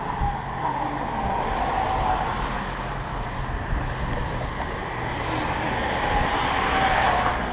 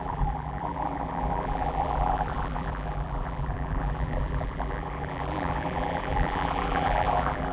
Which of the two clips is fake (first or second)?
second